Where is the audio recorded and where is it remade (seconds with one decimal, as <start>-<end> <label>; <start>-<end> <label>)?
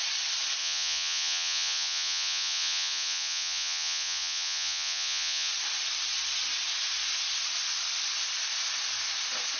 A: 0.0-0.6 recorded; 0.6-5.5 remade; 5.5-9.6 recorded